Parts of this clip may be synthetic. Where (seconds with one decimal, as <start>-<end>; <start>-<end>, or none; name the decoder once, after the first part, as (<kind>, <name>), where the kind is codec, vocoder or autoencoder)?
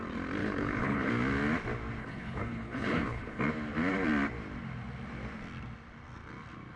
0.4-1.1 (codec, HILCodec); 2.0-3.4